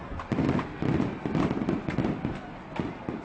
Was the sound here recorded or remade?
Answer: recorded